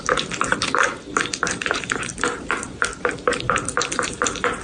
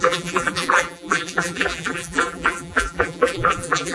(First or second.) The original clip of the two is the first